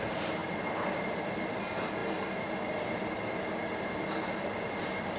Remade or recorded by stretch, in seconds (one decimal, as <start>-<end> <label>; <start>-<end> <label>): 0.0-5.2 recorded